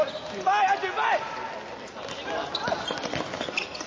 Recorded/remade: recorded